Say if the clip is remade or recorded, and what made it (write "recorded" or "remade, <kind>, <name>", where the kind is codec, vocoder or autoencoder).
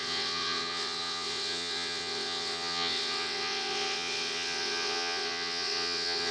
remade, vocoder, WaveNeXt